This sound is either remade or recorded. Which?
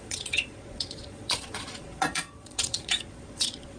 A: remade